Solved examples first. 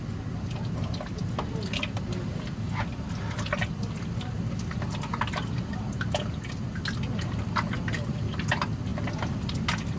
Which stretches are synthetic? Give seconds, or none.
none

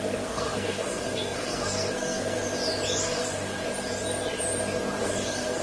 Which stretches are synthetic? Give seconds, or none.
0.0-2.4 (codec, SNAC); 3.0-3.6; 5.0-5.6